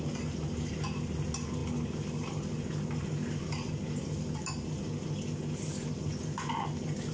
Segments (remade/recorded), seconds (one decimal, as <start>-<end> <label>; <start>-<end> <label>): 0.0-7.1 recorded